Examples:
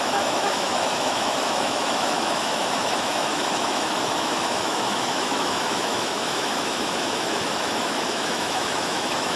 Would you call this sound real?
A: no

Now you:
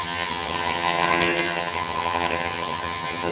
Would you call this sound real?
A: no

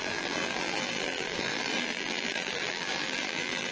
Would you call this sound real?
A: no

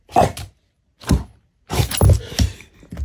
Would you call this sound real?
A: yes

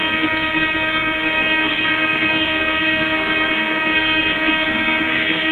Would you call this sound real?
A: no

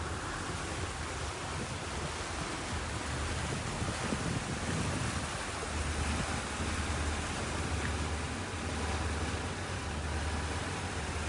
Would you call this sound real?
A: yes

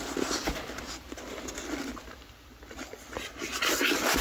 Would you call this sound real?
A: yes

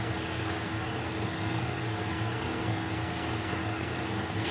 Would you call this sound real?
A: no